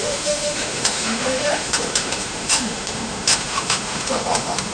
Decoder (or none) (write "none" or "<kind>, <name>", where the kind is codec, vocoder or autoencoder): autoencoder, DAC-VAE